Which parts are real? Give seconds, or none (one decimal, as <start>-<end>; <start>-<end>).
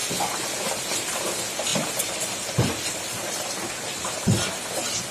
0.0-1.7; 3.5-5.1